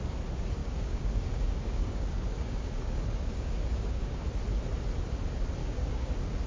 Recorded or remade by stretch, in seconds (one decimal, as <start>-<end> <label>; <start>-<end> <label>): 0.0-0.6 recorded; 0.6-4.2 remade; 4.2-5.6 recorded; 5.6-6.1 remade; 6.1-6.5 recorded